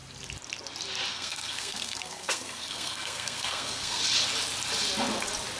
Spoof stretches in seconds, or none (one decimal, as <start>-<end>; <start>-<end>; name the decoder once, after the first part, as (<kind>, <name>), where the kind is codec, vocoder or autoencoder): 1.1-4.0 (codec, SNAC)